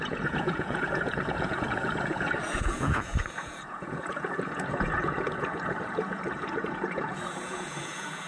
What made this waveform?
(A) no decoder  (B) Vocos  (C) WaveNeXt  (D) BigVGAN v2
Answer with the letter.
B